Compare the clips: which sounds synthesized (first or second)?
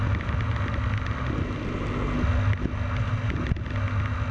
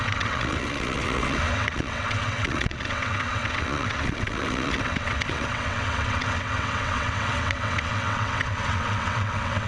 second